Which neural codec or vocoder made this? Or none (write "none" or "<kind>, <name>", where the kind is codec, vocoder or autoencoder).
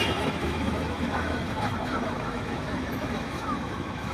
autoencoder, DAC-VAE